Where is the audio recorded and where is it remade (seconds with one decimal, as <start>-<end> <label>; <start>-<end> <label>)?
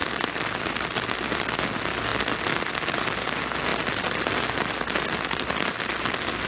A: 0.0-6.5 recorded